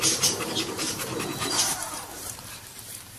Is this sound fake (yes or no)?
yes